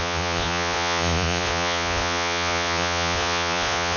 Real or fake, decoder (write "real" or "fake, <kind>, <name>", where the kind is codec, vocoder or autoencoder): fake, vocoder, Vocos